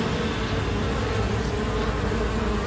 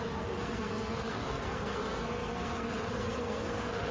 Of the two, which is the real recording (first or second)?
first